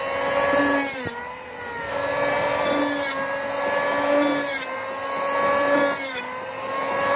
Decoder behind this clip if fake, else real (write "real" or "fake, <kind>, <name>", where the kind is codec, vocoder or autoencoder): real